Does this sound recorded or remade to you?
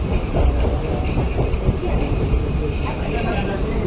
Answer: remade